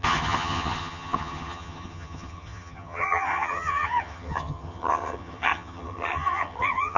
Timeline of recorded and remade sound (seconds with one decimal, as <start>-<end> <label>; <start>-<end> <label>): 0.0-7.0 remade